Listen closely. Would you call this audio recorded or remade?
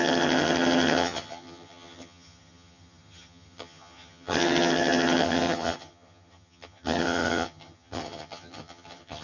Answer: remade